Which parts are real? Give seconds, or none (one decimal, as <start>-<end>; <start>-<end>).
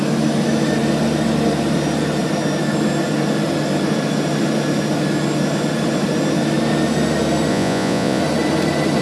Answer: 0.0-7.5; 8.2-9.0